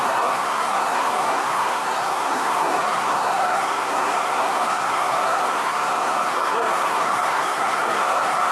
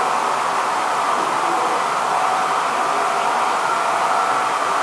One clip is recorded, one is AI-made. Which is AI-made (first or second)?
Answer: first